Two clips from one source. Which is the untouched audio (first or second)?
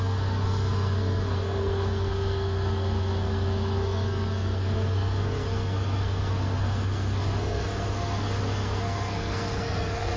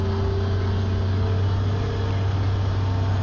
second